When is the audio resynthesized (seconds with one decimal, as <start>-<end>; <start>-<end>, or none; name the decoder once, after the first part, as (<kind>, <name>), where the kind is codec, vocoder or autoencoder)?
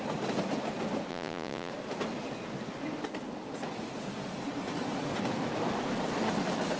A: 1.1-1.7 (vocoder, Vocos)